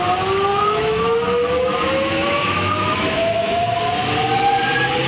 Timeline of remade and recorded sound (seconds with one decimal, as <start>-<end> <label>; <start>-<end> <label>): 0.0-0.5 recorded; 0.5-3.6 remade; 3.6-5.1 recorded